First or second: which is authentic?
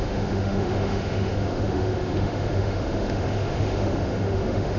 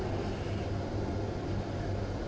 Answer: second